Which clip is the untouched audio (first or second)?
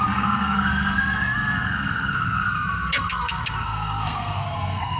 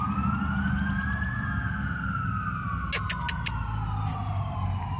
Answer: second